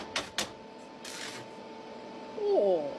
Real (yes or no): yes